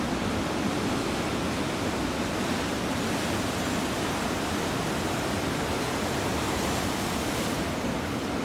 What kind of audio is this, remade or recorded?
recorded